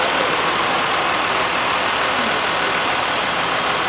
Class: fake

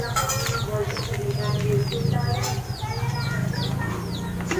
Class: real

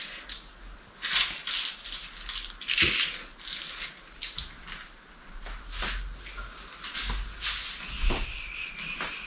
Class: real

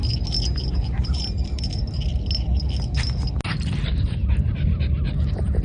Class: real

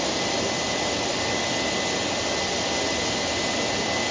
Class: real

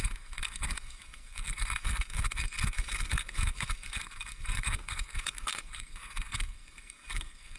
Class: fake